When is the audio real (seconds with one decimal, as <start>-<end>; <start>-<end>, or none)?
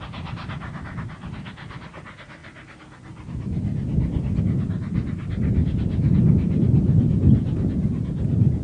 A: 2.4-4.4